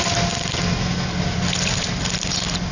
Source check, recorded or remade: recorded